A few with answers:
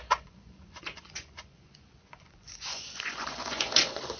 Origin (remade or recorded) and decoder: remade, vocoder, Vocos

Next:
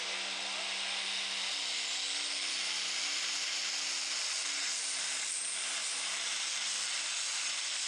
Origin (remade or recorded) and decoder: recorded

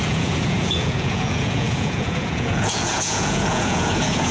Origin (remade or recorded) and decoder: remade, vocoder, Vocos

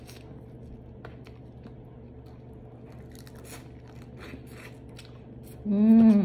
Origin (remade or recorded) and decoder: recorded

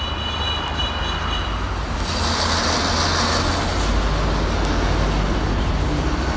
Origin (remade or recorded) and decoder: recorded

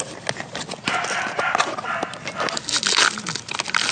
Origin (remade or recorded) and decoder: recorded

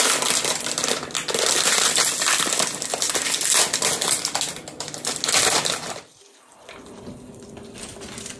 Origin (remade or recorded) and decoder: recorded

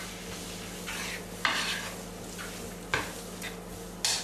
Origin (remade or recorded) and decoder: recorded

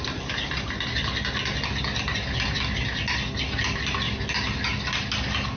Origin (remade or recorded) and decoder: recorded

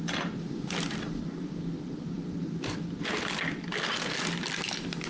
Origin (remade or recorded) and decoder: recorded